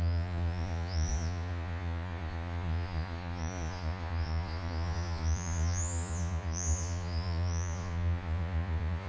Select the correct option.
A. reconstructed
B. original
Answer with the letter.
A